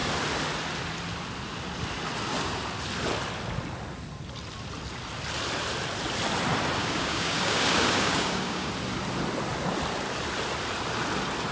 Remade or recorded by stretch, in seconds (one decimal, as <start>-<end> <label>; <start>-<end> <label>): 0.0-6.8 recorded; 6.8-8.7 remade; 8.7-11.5 recorded